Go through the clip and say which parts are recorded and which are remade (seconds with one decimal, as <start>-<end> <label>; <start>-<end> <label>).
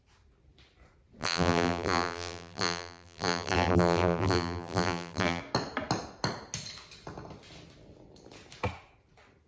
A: 0.0-1.2 recorded; 1.2-5.4 remade; 5.4-9.5 recorded